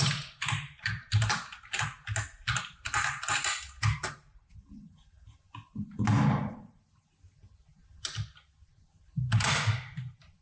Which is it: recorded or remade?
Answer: recorded